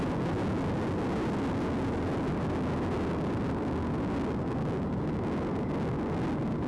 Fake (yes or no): no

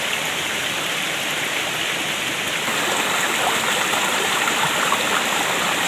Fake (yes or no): yes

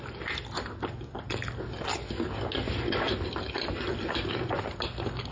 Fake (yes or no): no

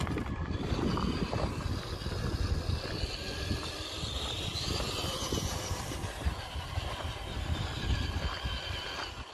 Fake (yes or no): no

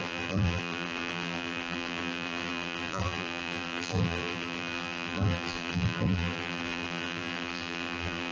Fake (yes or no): yes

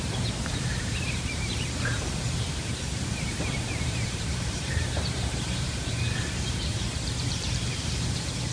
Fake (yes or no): yes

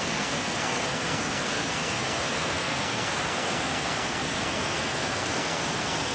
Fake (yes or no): yes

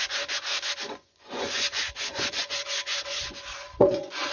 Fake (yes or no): yes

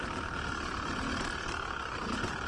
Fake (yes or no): no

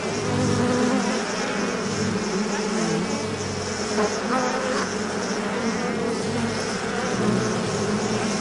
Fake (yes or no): no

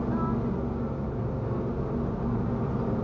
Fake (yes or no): no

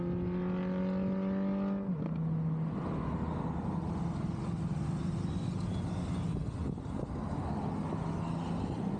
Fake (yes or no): no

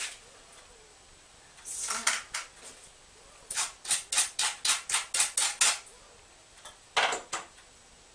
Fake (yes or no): no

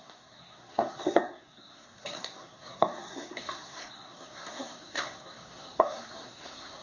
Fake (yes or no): yes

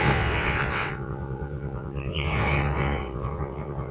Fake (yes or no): yes